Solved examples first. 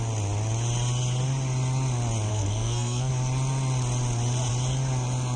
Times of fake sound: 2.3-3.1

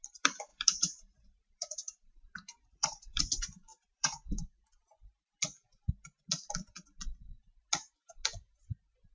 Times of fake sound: 0.5-3.2; 3.7-4.3

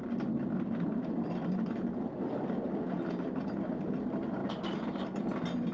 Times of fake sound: none

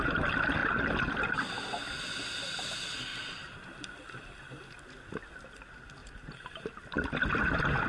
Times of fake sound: 3.1-4.6; 6.0-6.6

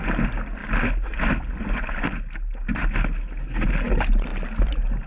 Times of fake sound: none